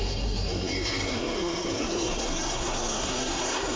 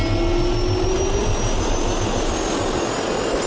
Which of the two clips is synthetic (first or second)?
first